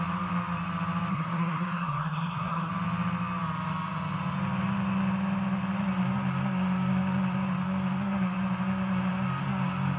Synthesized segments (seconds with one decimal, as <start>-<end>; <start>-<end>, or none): 1.1-2.7